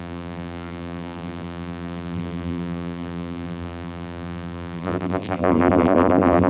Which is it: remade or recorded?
remade